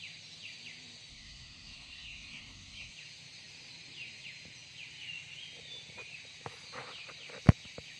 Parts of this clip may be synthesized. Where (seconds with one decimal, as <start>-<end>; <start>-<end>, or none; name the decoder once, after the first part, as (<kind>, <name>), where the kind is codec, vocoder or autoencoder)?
1.1-2.9 (codec, SNAC)